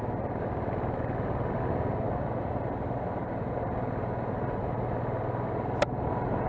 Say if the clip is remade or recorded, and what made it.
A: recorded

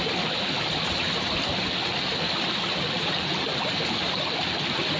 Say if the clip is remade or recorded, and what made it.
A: recorded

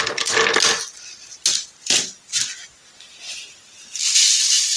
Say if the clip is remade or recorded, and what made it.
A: recorded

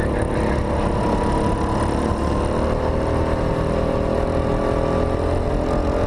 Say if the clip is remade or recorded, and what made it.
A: recorded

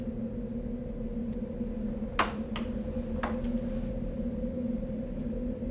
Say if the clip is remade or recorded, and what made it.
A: recorded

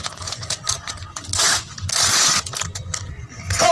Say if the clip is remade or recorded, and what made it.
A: remade, vocoder, Vocos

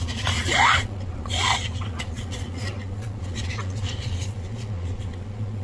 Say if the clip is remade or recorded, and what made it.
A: remade, vocoder, Vocos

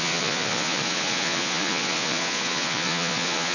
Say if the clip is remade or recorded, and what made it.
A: remade, vocoder, Vocos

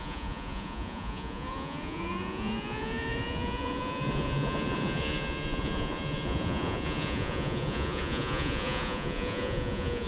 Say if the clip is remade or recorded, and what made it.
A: remade, vocoder, Vocos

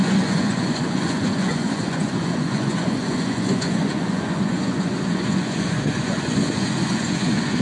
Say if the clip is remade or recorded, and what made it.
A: remade, vocoder, Vocos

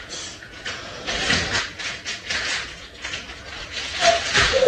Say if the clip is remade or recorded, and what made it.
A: remade, vocoder, Vocos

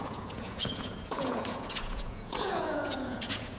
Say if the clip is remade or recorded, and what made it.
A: remade, vocoder, Vocos